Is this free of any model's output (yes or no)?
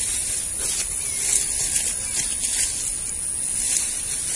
yes